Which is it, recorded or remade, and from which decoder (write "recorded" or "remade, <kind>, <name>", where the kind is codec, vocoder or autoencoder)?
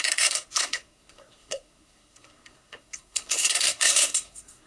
remade, codec, SNAC